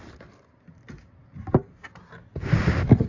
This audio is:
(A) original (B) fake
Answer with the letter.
A